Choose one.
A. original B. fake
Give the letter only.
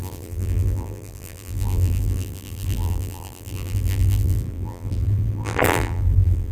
B